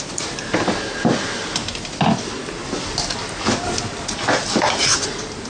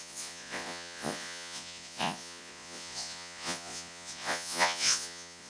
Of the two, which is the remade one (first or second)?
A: second